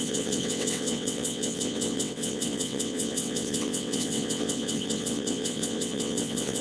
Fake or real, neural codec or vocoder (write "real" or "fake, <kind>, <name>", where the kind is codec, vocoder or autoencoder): fake, vocoder, WaveNeXt